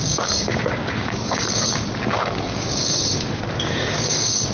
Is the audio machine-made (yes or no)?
yes